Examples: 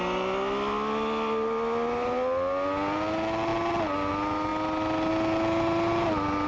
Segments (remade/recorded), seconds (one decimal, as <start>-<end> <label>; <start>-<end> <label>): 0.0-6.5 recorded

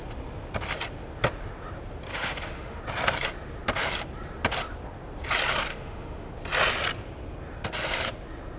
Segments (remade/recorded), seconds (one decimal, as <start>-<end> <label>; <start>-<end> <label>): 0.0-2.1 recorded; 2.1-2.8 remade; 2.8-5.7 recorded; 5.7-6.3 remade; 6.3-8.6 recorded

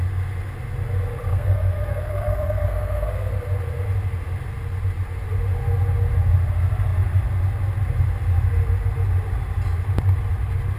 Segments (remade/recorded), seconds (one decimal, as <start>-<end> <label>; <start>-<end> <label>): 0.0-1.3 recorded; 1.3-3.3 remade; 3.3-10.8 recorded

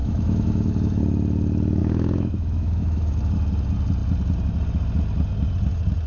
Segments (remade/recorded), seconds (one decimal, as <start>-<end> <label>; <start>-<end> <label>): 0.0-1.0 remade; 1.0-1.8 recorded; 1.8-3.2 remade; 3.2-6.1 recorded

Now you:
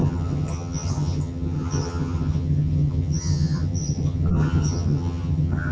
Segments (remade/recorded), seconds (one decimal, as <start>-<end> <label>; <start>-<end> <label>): 0.0-5.7 remade

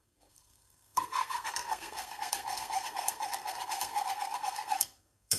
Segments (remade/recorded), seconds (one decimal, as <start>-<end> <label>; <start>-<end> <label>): 0.0-5.4 remade

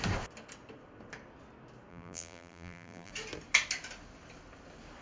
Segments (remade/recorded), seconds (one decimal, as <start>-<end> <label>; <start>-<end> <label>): 0.0-1.9 recorded; 1.9-3.1 remade; 3.1-5.0 recorded